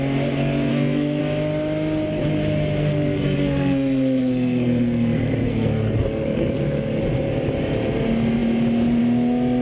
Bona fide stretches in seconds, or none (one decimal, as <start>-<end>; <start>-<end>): 0.0-0.7; 1.2-2.8; 7.0-9.6